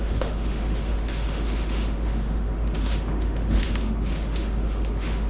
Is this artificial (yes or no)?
yes